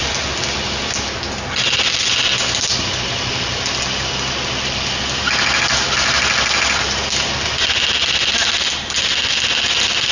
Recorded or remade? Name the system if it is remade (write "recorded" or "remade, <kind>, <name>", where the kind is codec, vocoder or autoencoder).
recorded